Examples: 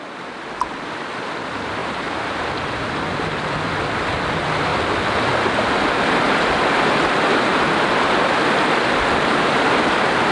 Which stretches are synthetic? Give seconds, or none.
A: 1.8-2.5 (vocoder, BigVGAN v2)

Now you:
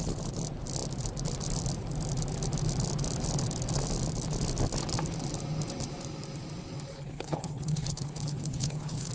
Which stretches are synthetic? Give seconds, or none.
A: 6.9-9.1 (codec, HILCodec)

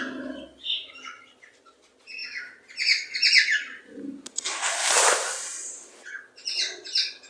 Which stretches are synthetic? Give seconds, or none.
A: none

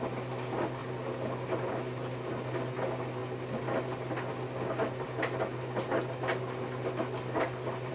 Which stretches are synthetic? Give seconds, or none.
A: none

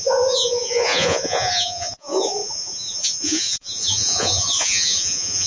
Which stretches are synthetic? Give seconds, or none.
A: 0.0-5.5 (vocoder, Vocos)